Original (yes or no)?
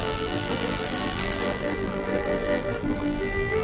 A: no